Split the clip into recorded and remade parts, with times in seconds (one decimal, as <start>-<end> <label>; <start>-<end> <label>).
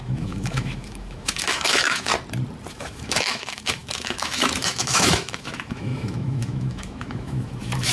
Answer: 0.0-2.1 remade; 2.1-2.7 recorded; 2.7-7.9 remade